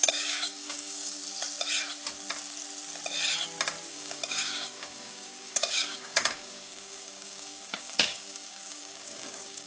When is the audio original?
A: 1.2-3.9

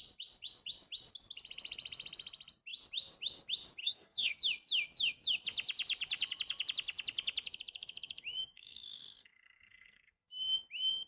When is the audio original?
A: 0.0-3.8; 4.4-8.4; 10.3-11.1